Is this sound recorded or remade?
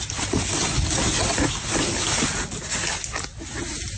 recorded